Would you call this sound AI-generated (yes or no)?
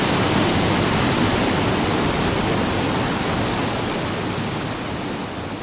no